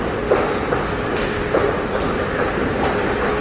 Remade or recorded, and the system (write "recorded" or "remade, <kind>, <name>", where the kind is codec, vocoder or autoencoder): recorded